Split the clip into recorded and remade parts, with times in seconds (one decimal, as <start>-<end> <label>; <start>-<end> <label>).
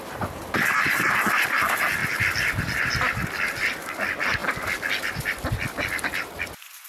0.0-2.0 remade; 2.0-2.6 recorded; 2.6-6.9 remade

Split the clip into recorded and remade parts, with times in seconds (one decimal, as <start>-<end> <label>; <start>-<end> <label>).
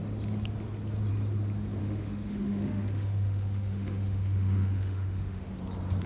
0.0-1.8 recorded; 1.8-5.5 remade; 5.5-6.1 recorded